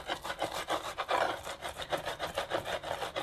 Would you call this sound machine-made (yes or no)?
no